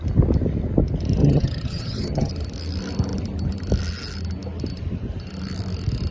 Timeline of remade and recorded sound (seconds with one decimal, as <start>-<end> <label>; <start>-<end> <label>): 0.0-1.2 recorded; 1.2-2.3 remade; 2.3-6.1 recorded